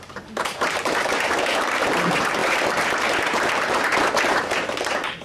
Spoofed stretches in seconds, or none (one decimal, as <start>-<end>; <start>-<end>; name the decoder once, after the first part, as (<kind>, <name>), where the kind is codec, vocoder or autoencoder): 0.0-3.9 (vocoder, BigVGAN v2); 4.4-5.2